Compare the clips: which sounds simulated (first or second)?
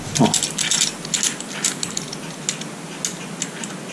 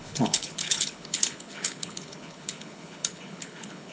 second